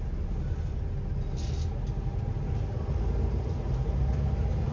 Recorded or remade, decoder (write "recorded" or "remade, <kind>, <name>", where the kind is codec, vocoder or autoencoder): recorded